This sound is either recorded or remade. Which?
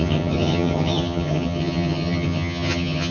remade